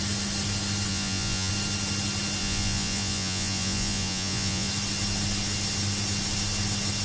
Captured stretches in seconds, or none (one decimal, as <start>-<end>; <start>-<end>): 0.0-0.9; 1.5-2.4; 4.7-7.0